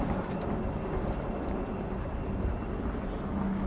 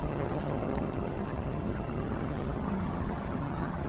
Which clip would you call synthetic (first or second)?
second